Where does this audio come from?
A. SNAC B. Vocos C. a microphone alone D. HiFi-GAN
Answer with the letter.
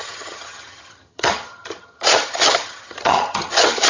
D